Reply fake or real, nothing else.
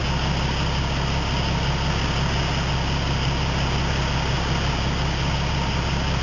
real